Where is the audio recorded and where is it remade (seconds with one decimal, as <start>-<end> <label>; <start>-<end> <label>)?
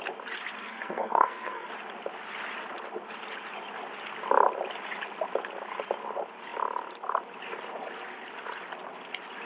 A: 0.0-0.6 recorded; 0.6-1.7 remade; 1.7-9.5 recorded